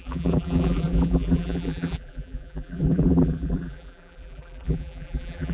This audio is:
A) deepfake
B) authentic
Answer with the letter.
A